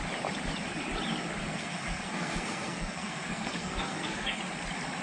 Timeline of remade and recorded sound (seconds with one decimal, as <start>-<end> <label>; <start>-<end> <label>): 0.0-1.4 recorded; 1.4-4.4 remade; 4.4-5.0 recorded